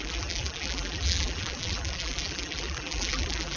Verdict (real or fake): fake